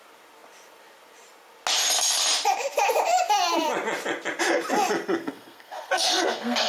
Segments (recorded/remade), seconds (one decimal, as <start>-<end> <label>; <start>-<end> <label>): 0.0-5.2 recorded; 5.2-6.7 remade